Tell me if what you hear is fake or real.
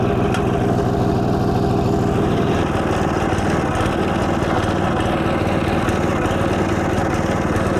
real